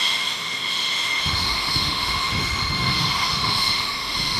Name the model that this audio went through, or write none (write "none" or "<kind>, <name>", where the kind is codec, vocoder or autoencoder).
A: autoencoder, DAC-VAE